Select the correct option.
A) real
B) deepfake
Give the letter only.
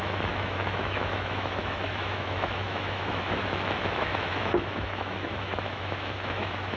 B